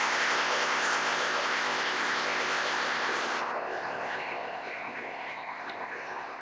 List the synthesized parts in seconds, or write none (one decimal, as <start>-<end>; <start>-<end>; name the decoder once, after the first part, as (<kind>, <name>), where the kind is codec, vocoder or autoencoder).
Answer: 0.0-6.4 (codec, ZipCodec)